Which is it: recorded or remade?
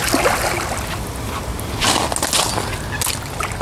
recorded